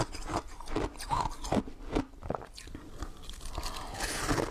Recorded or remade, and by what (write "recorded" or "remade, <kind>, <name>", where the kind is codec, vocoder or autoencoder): recorded